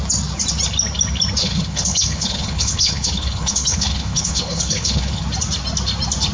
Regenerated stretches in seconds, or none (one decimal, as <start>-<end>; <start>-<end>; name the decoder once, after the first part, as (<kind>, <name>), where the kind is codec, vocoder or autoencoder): 1.4-5.2 (codec, HILCodec)